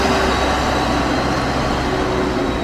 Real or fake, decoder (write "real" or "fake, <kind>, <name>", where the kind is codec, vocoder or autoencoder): real